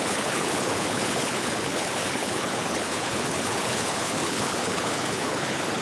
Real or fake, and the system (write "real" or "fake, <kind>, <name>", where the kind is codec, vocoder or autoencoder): fake, codec, HILCodec